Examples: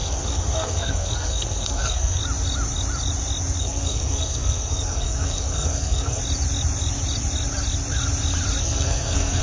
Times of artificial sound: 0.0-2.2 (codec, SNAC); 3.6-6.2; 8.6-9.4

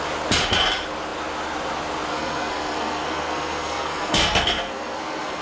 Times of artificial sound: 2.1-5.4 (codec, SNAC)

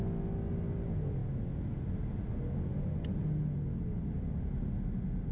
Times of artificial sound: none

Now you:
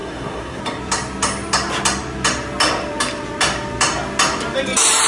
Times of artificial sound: 0.0-0.6 (codec, SNAC)

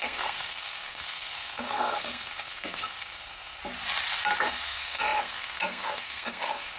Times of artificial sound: 0.0-3.6 (codec, SNAC); 4.4-6.8

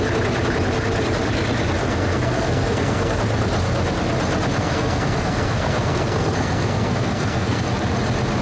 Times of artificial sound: 1.8-3.2 (codec, SNAC); 4.6-7.6

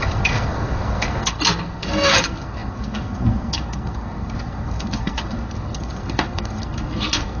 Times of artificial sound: 0.0-7.4 (codec, SNAC)

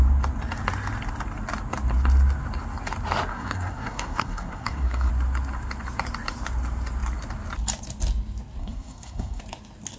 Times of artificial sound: 3.3-5.1 (codec, SNAC); 8.6-9.4